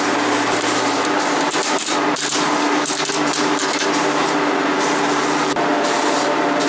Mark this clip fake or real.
fake